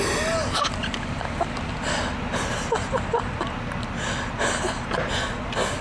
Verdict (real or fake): real